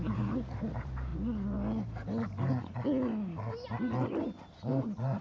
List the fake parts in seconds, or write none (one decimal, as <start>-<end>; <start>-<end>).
0.0-1.1; 4.2-5.2